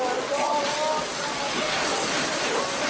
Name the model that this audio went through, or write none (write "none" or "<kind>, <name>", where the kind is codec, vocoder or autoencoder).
none